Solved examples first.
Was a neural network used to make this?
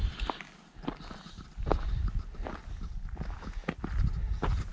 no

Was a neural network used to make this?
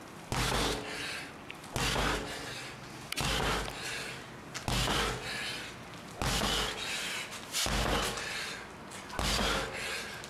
no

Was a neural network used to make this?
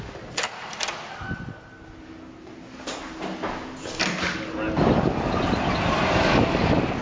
no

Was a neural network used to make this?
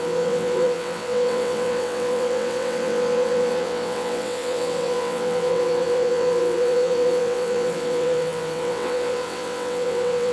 yes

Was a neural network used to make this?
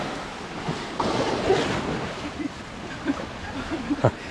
no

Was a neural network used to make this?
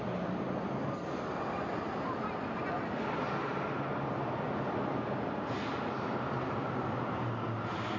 no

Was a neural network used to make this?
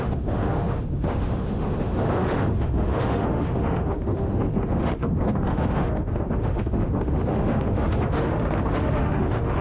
yes